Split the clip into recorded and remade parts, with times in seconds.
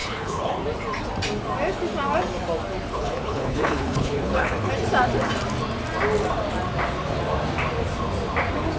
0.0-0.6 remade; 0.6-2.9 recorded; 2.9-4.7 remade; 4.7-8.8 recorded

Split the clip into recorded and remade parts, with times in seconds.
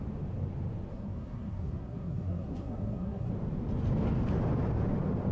0.0-0.9 recorded; 0.9-3.3 remade; 3.3-5.3 recorded